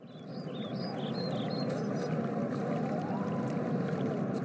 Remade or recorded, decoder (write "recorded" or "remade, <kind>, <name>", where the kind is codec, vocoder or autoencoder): recorded